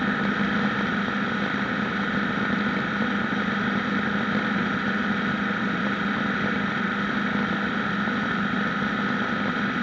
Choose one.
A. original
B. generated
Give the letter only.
A